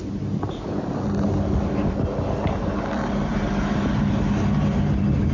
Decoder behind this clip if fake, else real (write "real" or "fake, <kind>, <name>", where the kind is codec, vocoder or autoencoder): real